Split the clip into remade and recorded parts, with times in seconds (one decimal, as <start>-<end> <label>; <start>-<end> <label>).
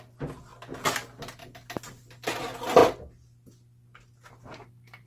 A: 0.0-5.1 recorded